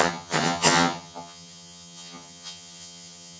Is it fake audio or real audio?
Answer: fake